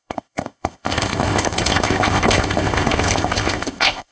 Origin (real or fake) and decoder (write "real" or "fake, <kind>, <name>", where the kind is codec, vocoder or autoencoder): fake, codec, ZipCodec